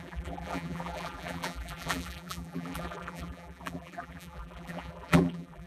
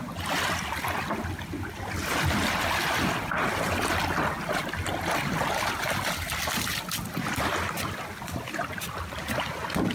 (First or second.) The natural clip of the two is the second